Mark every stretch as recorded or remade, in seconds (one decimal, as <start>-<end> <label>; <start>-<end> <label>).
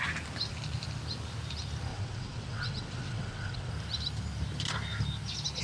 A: 0.0-1.9 recorded; 1.9-3.7 remade; 3.7-5.6 recorded